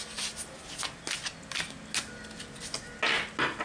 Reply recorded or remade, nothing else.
recorded